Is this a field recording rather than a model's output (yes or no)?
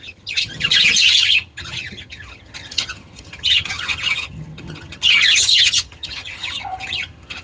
no